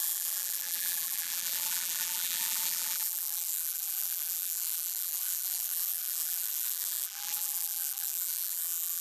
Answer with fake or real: fake